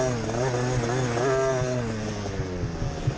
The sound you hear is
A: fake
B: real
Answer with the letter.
B